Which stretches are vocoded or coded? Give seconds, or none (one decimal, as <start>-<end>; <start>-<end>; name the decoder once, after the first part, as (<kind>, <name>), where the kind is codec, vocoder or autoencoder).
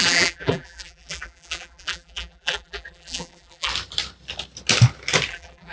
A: 0.0-3.7 (vocoder, BigVGAN v2); 5.3-5.7